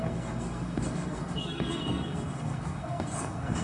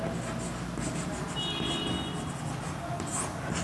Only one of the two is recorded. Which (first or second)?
second